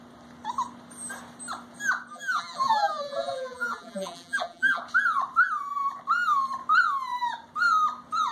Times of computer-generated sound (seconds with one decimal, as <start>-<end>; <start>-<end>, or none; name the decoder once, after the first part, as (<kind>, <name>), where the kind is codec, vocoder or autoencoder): 2.1-4.8 (vocoder, BigVGAN v2)